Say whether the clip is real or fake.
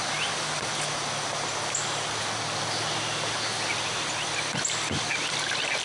real